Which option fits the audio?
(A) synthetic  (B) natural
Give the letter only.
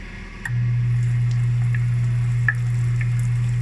B